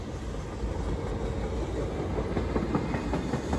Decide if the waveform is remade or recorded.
recorded